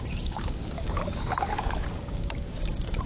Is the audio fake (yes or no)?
yes